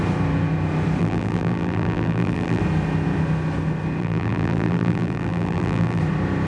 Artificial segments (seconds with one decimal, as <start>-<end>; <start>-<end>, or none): 1.0-2.6; 4.0-6.0